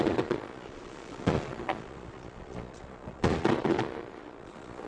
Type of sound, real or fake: fake